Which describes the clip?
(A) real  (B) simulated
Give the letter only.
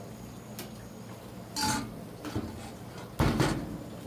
A